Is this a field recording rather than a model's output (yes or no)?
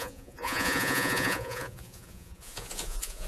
no